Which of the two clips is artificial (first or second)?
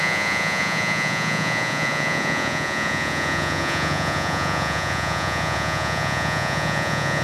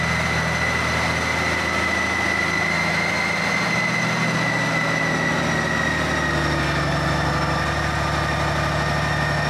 first